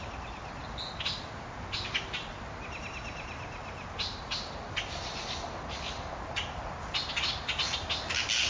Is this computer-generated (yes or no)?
no